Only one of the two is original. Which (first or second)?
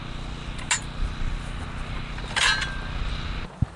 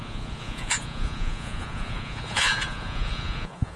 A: first